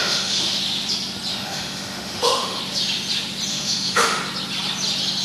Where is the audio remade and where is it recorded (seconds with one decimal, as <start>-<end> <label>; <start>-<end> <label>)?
0.0-0.6 remade; 0.6-1.3 recorded; 1.3-2.6 remade; 2.6-3.5 recorded; 3.5-4.2 remade; 4.2-5.2 recorded